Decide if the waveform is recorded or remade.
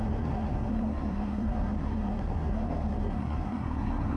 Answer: remade